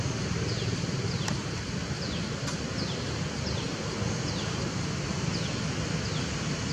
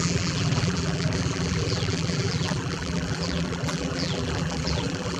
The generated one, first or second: second